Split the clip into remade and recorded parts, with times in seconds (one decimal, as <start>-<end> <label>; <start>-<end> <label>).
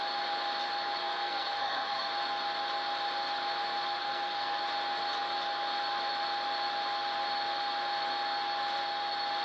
0.0-1.0 recorded; 1.0-2.1 remade; 2.1-4.0 recorded; 4.0-4.6 remade; 4.6-9.4 recorded